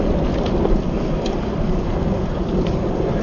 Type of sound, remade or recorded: remade